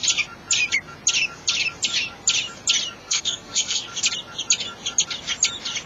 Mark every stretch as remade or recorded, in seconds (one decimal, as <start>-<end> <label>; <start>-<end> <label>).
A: 0.0-3.0 recorded; 3.0-3.8 remade; 3.8-5.9 recorded